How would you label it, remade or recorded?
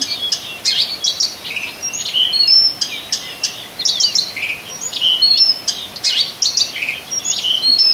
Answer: recorded